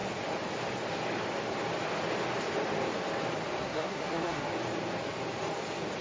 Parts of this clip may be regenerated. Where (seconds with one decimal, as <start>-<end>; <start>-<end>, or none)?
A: 3.6-4.5